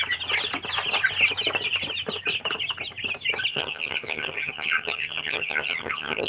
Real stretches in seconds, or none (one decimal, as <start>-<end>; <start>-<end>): 0.0-3.5